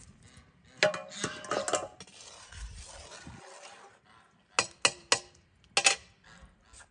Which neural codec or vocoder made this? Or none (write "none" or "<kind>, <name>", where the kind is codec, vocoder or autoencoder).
none